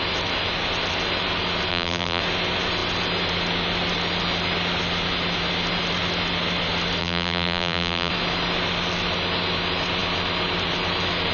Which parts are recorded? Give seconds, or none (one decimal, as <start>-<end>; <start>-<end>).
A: 0.0-1.7; 2.2-7.0; 8.1-11.3